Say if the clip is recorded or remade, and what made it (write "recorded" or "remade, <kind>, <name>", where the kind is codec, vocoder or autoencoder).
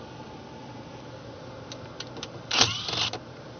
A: recorded